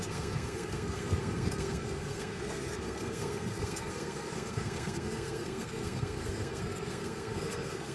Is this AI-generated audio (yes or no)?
yes